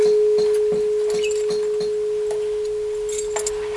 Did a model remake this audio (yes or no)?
no